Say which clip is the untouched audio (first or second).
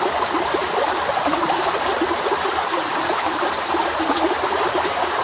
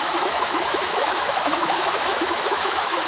first